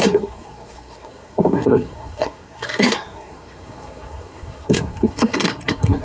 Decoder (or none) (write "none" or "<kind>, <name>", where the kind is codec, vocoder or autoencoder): codec, SNAC